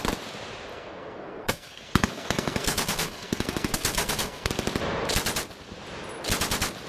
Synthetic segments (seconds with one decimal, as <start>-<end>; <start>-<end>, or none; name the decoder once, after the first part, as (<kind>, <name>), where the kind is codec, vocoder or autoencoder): 0.7-4.5 (codec, SNAC)